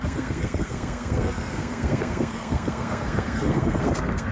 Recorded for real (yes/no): no